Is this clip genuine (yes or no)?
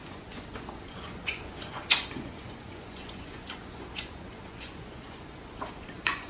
no